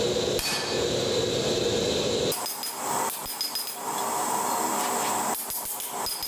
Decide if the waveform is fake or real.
real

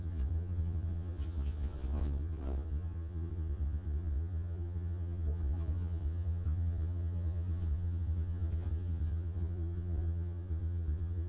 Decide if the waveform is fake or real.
fake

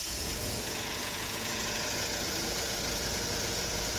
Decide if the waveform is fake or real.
fake